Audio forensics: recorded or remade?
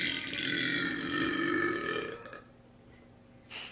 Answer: recorded